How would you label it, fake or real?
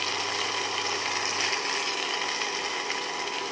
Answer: real